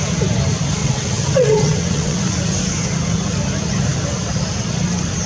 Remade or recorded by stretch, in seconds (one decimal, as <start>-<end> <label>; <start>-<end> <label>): 0.0-0.8 recorded; 0.8-2.2 remade; 2.2-5.3 recorded